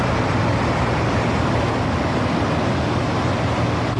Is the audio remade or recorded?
recorded